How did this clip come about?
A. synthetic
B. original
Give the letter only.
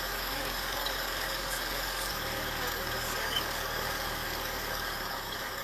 A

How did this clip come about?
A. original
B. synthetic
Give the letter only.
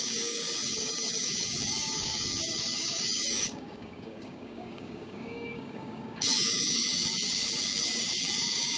B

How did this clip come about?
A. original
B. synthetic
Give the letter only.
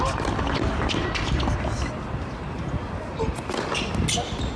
A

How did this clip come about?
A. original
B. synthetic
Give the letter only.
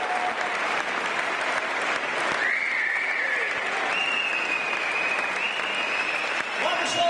A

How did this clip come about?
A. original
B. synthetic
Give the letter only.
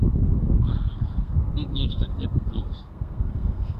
B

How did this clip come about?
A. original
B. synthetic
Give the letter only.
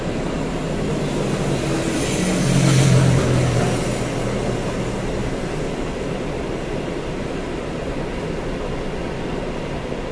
A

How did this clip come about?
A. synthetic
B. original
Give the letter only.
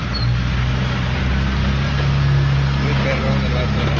B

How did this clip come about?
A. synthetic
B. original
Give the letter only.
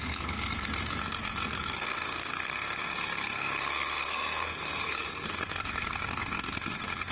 A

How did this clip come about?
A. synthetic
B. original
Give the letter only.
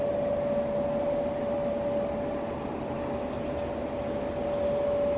B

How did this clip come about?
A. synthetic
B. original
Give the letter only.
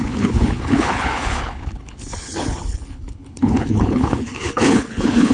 A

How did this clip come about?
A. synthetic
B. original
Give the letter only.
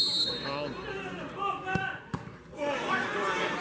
B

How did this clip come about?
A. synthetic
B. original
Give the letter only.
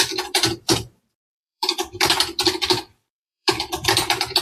A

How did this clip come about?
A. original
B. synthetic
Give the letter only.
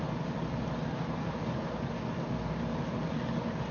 A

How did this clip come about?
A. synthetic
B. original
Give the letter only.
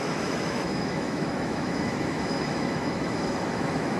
A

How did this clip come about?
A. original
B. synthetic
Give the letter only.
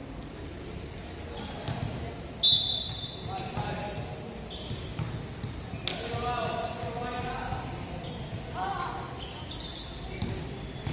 A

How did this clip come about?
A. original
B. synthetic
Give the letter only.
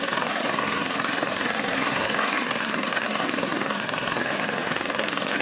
B